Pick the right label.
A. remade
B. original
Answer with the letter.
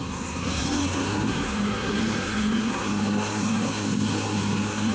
A